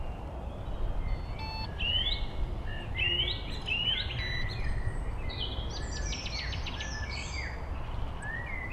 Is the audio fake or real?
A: real